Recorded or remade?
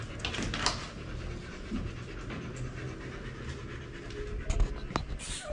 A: recorded